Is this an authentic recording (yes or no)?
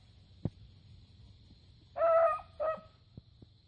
yes